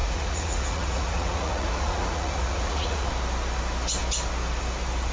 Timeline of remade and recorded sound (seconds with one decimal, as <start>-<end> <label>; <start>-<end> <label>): 0.0-3.1 remade; 3.1-5.1 recorded